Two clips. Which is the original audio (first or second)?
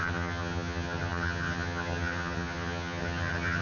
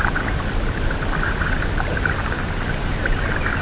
second